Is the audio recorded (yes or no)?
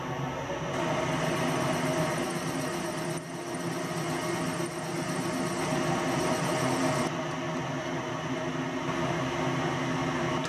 yes